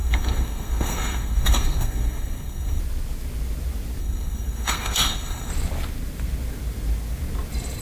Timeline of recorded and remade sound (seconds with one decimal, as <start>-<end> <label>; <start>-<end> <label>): 0.0-2.8 remade; 2.8-4.0 recorded; 4.0-5.5 remade; 5.5-7.8 recorded